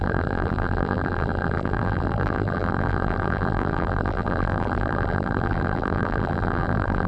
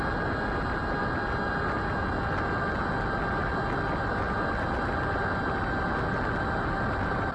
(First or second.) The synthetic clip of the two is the first